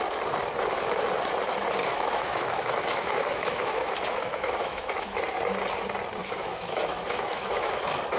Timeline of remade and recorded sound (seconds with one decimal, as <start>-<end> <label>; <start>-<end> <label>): 0.0-1.8 recorded; 1.8-5.2 remade; 5.2-6.2 recorded; 6.2-7.7 remade; 7.7-8.2 recorded